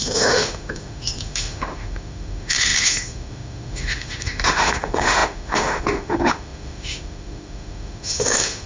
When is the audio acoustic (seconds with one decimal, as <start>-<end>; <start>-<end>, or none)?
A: none